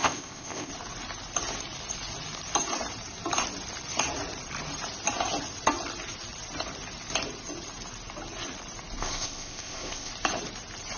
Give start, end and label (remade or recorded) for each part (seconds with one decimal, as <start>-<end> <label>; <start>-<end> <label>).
0.0-0.7 remade; 0.7-9.0 recorded; 9.0-10.1 remade; 10.1-11.0 recorded